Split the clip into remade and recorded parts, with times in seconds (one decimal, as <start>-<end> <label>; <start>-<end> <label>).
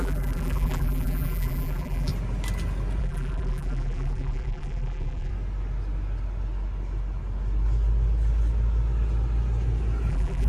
0.0-2.1 remade; 2.1-3.0 recorded; 3.0-5.3 remade; 5.3-10.1 recorded; 10.1-10.5 remade